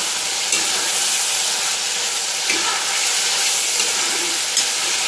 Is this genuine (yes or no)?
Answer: yes